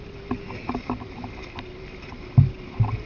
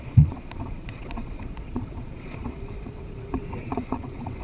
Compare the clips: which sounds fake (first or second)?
second